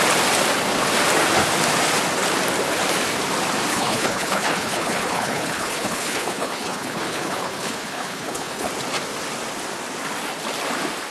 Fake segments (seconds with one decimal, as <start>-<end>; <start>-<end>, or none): 3.7-8.7